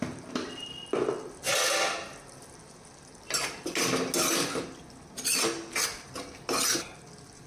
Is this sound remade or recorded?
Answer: recorded